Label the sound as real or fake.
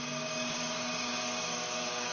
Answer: fake